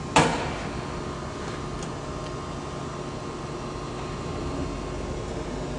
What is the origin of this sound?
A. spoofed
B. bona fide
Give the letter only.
B